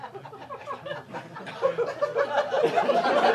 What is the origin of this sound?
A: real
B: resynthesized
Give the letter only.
A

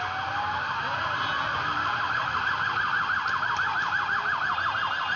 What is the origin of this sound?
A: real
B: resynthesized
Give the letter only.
A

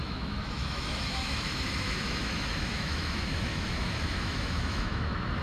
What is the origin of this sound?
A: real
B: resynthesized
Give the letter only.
B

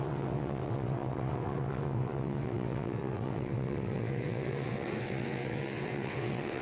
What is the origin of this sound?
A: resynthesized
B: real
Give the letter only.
A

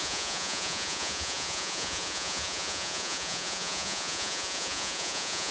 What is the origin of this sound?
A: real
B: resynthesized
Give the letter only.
B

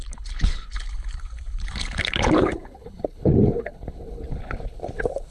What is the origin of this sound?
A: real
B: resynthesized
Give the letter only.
B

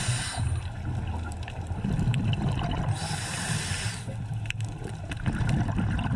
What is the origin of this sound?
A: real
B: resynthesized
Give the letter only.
A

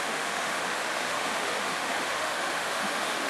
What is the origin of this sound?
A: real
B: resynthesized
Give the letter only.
B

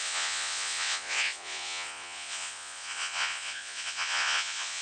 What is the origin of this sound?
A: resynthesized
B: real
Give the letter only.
A